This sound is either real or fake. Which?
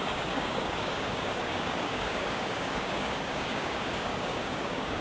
fake